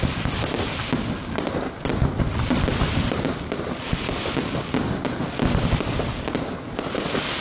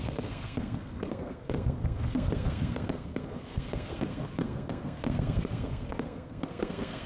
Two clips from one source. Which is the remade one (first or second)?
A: second